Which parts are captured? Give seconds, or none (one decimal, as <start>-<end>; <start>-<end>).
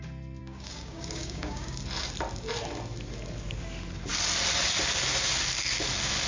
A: 0.0-0.4; 1.8-6.3